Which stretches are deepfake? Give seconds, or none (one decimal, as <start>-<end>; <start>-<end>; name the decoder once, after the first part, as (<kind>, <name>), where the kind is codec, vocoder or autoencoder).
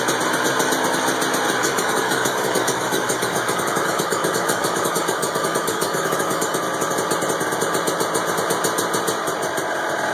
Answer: 1.6-6.6 (codec, DAC)